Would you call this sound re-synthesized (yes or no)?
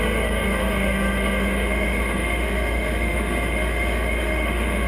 yes